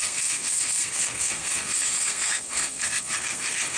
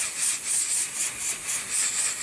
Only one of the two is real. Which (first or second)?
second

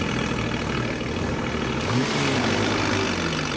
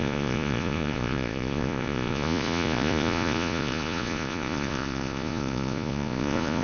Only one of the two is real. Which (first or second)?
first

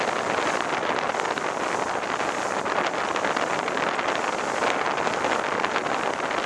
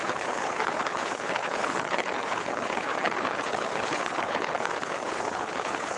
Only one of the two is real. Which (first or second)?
first